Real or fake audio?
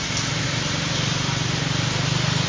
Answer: real